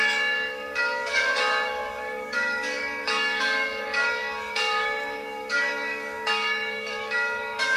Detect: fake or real fake